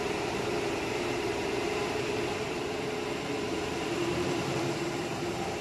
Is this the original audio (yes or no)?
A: no